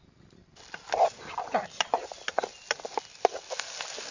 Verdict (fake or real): real